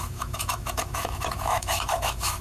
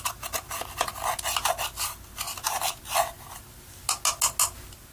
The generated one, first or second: first